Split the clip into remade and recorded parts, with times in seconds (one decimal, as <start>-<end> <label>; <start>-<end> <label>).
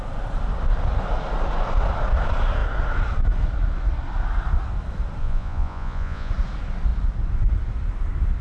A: 0.0-5.2 recorded; 5.2-6.3 remade; 6.3-8.4 recorded